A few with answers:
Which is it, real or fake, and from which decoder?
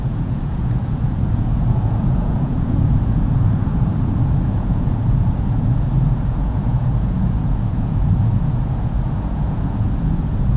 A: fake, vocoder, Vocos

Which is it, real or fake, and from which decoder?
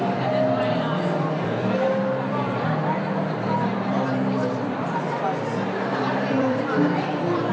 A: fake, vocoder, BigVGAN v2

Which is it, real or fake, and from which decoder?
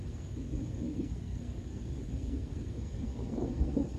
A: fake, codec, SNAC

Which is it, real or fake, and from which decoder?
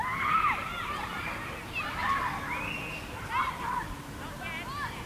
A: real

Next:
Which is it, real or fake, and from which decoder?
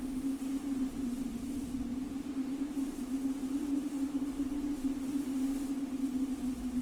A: real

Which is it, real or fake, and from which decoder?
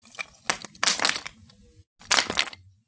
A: real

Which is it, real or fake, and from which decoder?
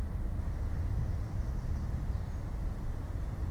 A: real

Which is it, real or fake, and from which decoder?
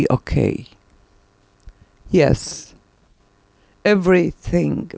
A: real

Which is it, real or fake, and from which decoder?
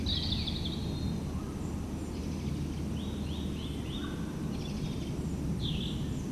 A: real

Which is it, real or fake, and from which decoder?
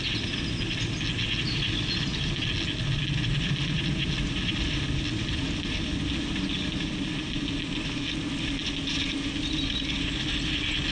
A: real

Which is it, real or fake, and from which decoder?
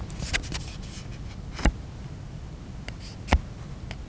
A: real